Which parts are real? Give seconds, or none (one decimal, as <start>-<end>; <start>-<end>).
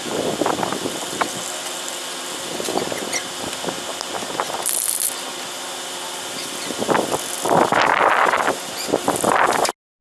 0.0-10.0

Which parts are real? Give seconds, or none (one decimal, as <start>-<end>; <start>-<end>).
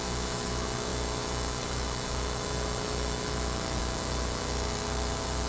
none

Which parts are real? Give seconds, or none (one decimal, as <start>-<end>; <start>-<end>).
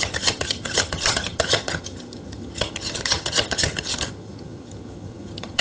none